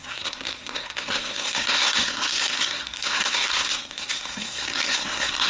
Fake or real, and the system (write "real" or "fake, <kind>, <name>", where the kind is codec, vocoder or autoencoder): fake, codec, SNAC